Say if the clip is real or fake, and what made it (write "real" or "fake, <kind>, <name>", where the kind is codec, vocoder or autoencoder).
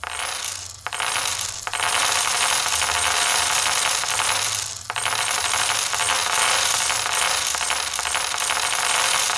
real